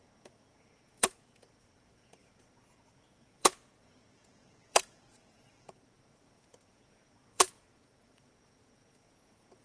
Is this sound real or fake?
fake